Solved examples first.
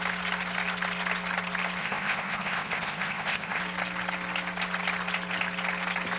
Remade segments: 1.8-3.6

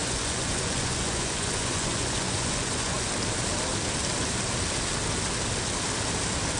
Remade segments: 0.0-3.1

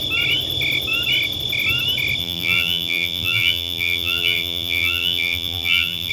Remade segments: 2.2-6.1

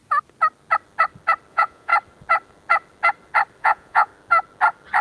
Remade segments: 1.5-1.9; 3.6-4.1

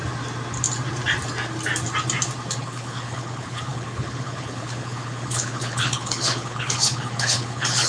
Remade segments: 2.6-7.9

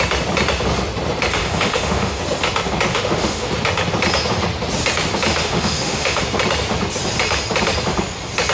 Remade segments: 1.4-2.2; 2.9-3.5; 5.3-6.2